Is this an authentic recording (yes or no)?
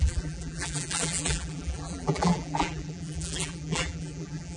no